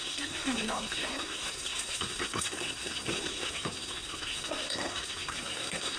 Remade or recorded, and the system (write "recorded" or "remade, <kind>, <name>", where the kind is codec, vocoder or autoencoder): remade, codec, SNAC